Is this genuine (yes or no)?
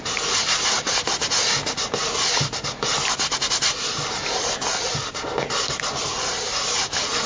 yes